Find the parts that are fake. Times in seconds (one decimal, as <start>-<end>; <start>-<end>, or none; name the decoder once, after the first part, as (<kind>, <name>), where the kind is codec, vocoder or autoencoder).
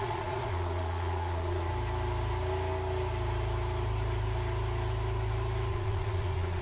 0.0-1.7 (vocoder, Vocos); 5.7-6.6